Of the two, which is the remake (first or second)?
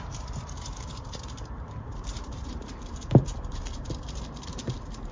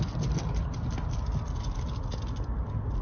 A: first